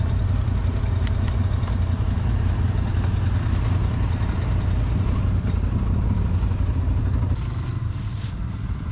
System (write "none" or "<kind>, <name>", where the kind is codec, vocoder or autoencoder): none